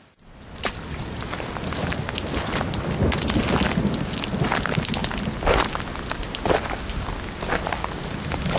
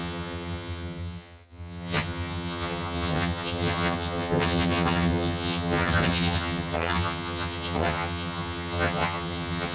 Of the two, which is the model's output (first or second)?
second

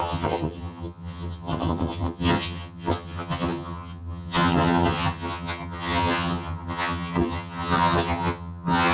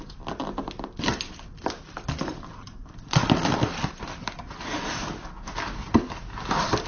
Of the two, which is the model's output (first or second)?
first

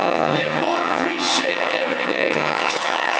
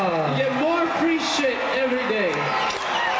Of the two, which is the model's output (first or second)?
first